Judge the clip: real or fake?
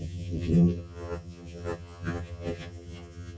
fake